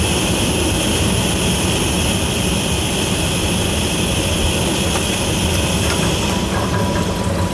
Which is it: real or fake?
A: real